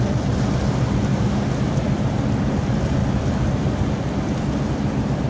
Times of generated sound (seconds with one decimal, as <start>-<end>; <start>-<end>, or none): none